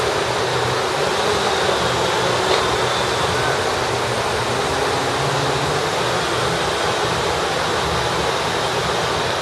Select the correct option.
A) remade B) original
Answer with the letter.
B